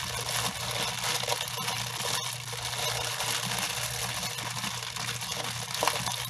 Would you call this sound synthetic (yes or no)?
no